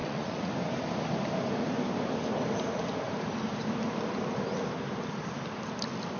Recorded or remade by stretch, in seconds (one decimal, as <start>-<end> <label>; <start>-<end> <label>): 0.0-0.5 remade; 0.5-6.2 recorded